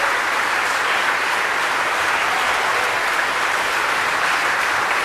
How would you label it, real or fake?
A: real